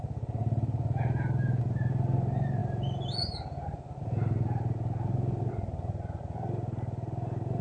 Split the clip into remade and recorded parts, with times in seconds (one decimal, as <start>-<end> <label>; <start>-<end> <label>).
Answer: 0.0-7.6 recorded